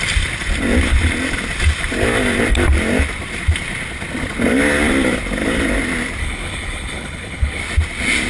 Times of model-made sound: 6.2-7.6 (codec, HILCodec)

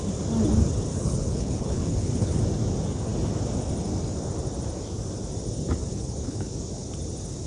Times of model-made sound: 1.0-2.4 (codec, HILCodec); 5.9-6.5

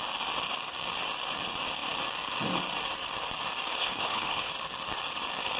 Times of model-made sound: 3.8-4.5 (codec, HILCodec)

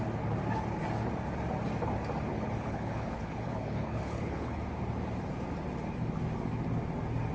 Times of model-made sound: 2.3-4.6 (codec, HILCodec)

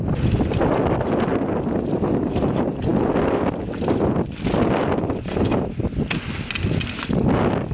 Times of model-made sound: none

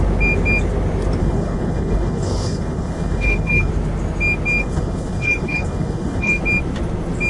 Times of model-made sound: 1.2-3.7 (codec, HILCodec); 4.6-6.4